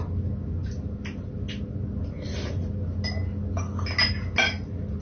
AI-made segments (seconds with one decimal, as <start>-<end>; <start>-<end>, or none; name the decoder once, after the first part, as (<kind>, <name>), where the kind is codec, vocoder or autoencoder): none